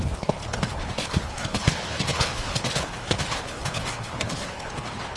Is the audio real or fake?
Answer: fake